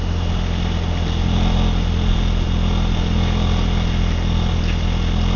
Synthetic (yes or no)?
no